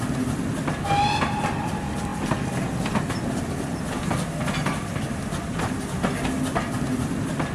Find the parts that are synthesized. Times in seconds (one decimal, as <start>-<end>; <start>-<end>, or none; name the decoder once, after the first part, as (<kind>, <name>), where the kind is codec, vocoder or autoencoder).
none